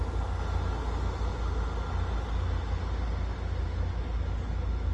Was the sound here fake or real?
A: real